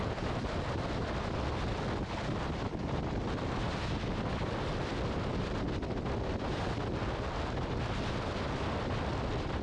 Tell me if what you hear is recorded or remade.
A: recorded